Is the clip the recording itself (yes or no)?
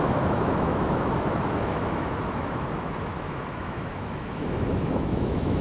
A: no